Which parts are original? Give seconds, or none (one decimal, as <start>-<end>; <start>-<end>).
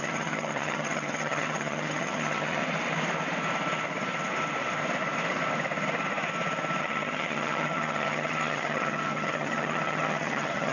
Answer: 2.6-6.8